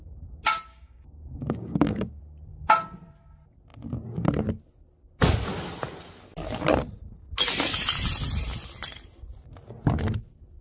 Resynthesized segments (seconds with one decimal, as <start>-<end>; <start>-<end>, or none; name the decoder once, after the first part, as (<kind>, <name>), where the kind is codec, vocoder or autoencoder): 0.7-2.2 (codec, DAC)